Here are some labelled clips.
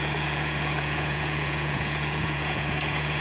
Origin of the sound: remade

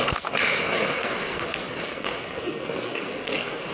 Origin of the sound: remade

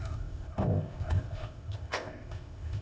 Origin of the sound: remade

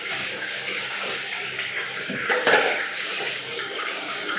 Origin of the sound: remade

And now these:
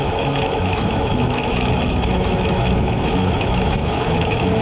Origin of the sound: remade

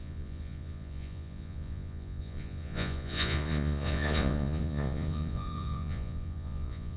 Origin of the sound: remade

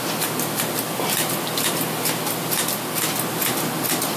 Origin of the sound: recorded